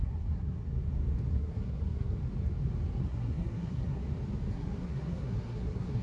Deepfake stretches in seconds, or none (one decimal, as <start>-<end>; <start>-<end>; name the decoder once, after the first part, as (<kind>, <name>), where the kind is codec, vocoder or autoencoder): 0.0-0.6 (codec, SNAC); 1.3-2.2; 3.0-4.0; 4.5-6.0